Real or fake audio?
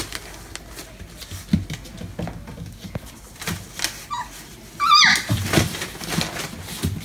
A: real